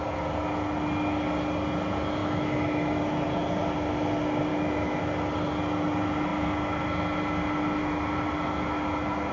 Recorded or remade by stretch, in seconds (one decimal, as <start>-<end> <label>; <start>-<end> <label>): 0.0-2.2 recorded; 2.2-3.0 remade; 3.0-4.5 recorded; 4.5-5.0 remade; 5.0-9.3 recorded